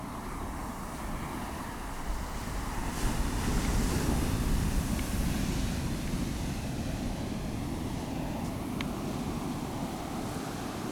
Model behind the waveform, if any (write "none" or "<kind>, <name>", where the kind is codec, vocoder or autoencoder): none